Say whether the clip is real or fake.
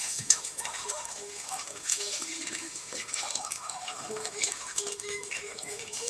fake